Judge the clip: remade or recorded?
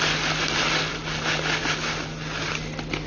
recorded